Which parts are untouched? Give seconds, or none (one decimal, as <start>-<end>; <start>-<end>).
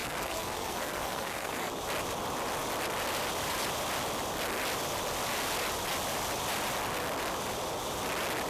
1.7-8.5